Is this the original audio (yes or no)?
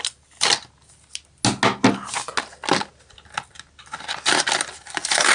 yes